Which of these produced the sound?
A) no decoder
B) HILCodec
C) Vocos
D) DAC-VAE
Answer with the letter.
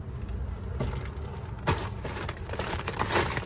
A